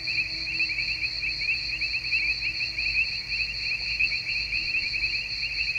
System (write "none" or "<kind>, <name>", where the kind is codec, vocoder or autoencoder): vocoder, BigVGAN v2